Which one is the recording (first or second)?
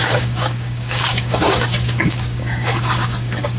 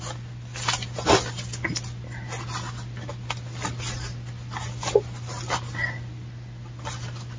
second